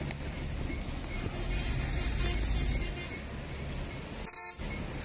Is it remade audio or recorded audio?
recorded